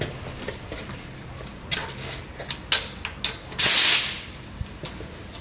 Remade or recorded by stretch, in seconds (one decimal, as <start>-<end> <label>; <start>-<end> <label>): 0.0-5.4 recorded